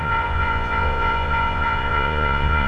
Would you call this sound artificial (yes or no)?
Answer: yes